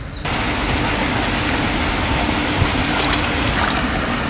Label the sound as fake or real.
real